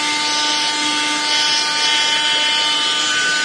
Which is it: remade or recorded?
recorded